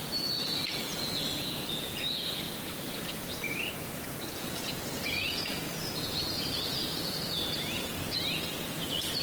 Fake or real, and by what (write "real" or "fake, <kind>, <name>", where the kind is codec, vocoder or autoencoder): fake, vocoder, Vocos